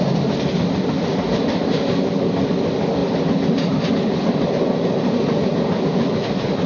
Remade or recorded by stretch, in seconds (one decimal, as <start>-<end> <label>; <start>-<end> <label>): 0.0-6.7 recorded